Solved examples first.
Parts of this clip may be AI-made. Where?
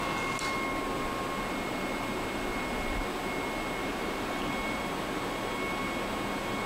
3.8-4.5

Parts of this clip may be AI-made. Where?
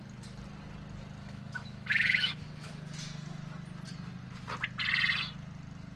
1.2-2.7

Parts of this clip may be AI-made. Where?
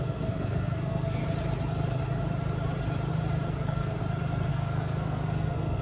0.0-1.2; 3.5-4.0; 4.5-5.8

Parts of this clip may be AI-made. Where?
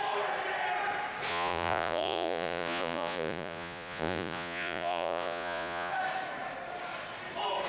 1.3-5.9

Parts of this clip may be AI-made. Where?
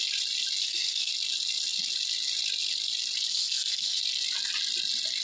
0.6-1.1; 3.3-4.0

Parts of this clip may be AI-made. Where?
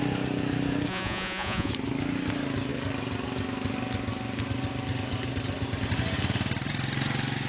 0.9-1.7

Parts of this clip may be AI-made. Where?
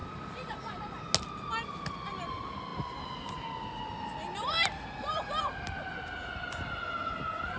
none